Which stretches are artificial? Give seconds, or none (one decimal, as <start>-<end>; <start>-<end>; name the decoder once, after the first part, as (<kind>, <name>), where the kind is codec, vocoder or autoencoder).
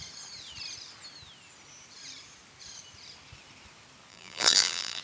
4.1-5.0 (vocoder, BigVGAN v2)